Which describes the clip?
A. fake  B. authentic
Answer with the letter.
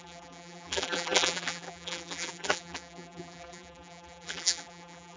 A